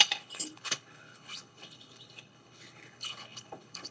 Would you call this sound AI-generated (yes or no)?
yes